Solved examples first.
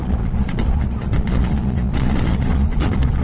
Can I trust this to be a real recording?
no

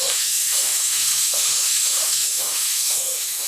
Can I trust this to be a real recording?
no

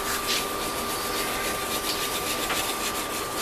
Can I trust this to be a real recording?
yes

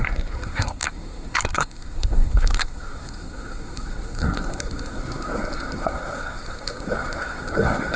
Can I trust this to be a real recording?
no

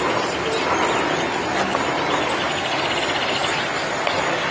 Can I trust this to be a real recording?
yes